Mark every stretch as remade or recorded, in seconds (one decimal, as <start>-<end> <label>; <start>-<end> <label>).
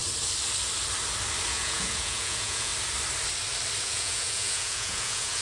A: 0.0-1.5 recorded; 1.5-2.7 remade; 2.7-3.8 recorded; 3.8-5.4 remade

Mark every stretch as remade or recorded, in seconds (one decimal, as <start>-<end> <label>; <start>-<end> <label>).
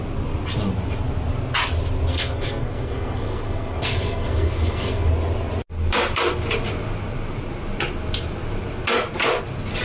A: 0.0-2.1 recorded; 2.1-5.1 remade; 5.1-9.8 recorded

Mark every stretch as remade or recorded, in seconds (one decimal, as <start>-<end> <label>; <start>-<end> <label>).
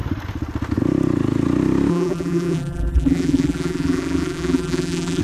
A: 0.0-1.9 recorded; 1.9-5.2 remade